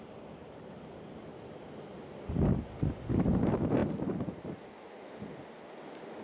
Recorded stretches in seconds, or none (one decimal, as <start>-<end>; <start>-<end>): 0.0-0.4; 1.2-6.2